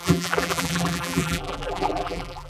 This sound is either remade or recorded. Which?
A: remade